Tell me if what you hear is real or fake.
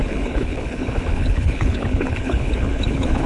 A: fake